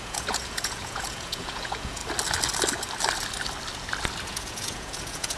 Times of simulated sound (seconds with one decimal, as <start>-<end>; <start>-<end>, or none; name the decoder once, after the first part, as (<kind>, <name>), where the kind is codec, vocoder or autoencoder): 0.0-2.0 (vocoder, Vocos); 4.2-5.4